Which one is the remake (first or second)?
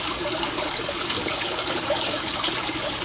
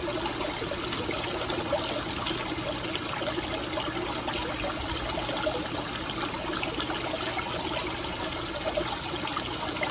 first